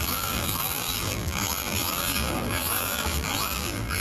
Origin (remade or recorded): remade